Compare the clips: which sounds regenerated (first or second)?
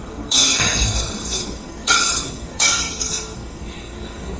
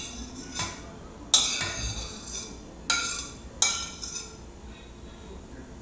first